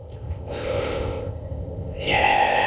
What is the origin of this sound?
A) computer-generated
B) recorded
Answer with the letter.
A